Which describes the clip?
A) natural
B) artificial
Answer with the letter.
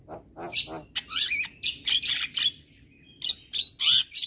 A